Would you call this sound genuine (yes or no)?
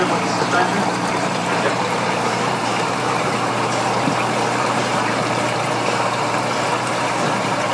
no